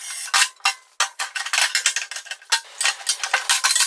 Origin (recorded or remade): recorded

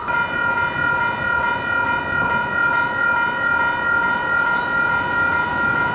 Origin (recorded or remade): recorded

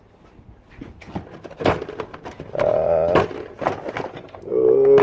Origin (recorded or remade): recorded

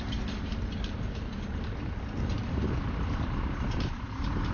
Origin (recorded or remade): remade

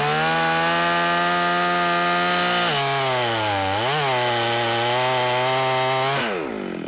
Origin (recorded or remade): recorded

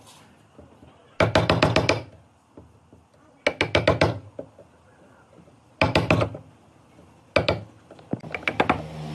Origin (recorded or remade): recorded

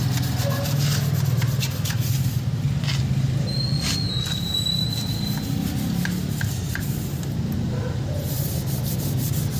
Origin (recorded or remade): recorded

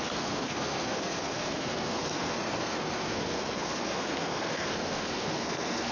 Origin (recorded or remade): remade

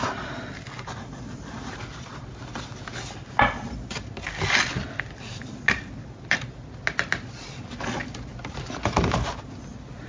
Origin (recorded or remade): recorded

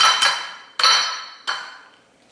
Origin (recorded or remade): recorded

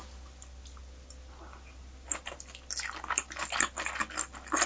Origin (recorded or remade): recorded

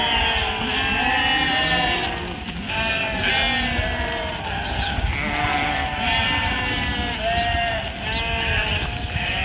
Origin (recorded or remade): recorded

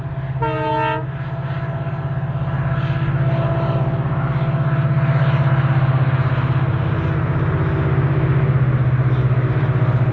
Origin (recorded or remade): recorded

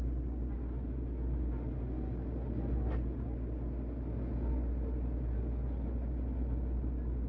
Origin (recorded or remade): recorded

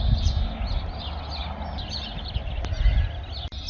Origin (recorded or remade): recorded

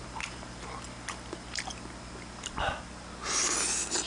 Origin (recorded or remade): recorded